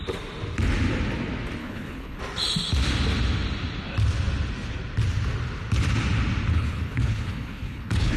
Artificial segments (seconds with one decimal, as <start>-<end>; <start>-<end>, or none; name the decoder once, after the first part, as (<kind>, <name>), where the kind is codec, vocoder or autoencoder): 1.6-2.2 (codec, HILCodec); 6.5-8.2